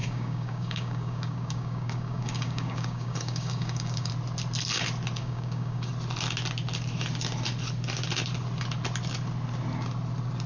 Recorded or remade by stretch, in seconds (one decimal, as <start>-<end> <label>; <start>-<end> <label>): 0.0-4.1 remade; 4.1-5.2 recorded; 5.2-5.9 remade; 5.9-10.5 recorded